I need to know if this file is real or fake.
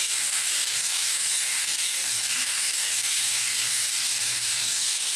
fake